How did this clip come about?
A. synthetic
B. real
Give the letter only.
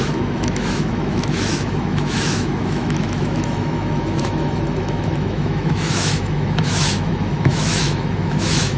A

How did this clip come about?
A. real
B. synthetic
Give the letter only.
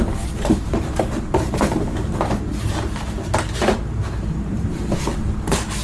B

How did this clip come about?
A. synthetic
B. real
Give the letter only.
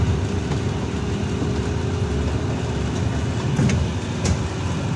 B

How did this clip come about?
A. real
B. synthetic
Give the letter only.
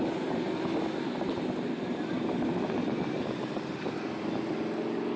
A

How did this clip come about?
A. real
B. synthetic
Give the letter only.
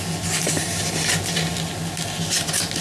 A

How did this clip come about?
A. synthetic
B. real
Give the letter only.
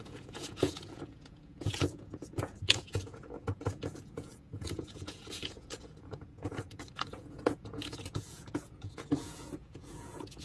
A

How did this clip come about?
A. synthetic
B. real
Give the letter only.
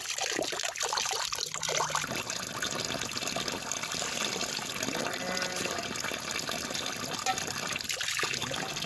B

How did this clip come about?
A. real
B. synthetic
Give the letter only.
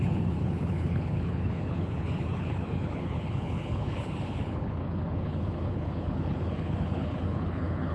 B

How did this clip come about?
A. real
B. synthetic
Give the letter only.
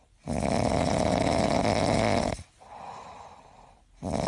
A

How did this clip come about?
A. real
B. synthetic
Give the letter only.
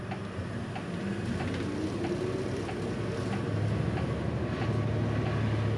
A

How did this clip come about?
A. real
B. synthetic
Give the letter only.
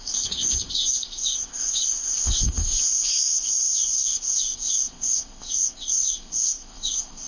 B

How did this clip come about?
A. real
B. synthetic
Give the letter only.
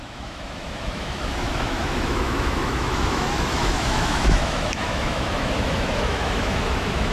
B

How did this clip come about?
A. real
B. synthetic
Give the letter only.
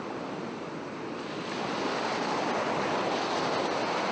A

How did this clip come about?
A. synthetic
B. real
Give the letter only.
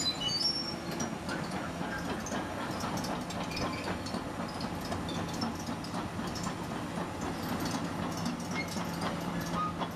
B